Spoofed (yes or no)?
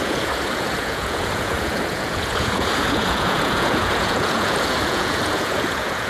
yes